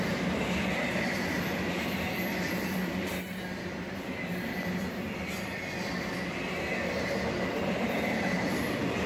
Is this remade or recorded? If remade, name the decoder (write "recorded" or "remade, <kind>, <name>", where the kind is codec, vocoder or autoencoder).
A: recorded